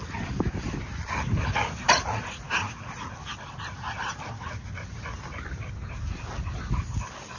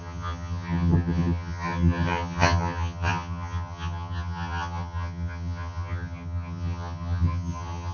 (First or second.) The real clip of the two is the first